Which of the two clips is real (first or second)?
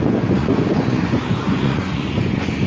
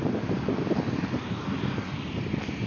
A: second